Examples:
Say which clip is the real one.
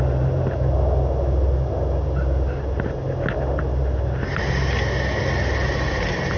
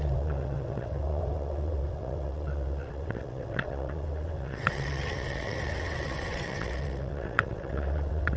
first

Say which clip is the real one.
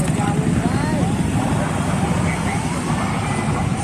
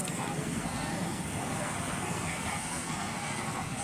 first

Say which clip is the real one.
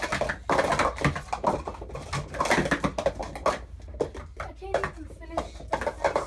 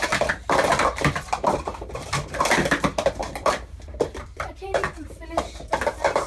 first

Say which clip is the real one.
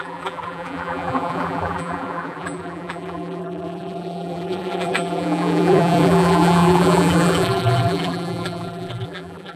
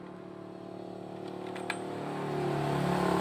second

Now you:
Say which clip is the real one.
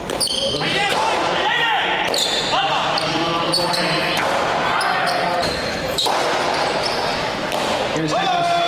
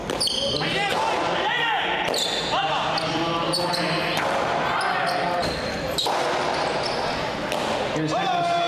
second